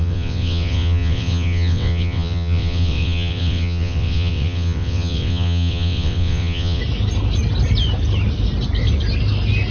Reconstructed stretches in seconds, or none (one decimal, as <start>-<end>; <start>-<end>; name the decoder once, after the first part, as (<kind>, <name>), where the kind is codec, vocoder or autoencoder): 0.0-6.8 (vocoder, WaveNeXt)